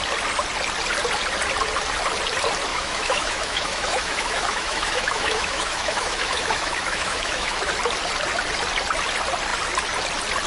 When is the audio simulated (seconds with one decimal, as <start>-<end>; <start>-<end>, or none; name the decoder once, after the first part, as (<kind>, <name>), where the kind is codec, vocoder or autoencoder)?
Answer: 2.7-7.7 (autoencoder, DAC-VAE)